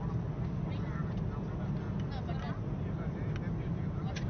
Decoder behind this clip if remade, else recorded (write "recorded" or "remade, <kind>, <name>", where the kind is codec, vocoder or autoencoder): recorded